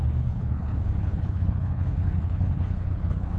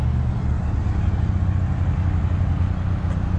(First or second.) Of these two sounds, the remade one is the first